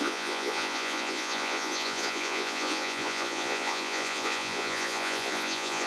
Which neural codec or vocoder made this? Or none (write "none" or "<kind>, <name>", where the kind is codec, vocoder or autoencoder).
vocoder, Vocos